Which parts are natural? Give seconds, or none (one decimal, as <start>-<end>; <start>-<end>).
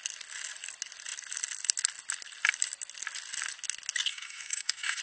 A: 0.0-4.1